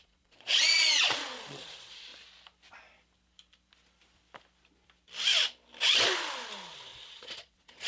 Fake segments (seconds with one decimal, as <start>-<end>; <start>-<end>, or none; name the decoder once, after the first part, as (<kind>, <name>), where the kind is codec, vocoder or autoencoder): 0.0-2.1 (vocoder, Vocos); 6.7-7.9